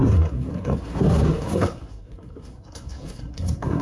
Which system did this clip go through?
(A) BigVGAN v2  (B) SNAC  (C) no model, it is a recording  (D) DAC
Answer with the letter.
B